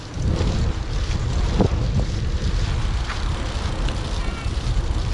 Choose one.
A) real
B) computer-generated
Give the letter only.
A